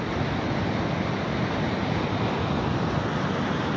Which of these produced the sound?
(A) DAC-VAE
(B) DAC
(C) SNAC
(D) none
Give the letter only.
D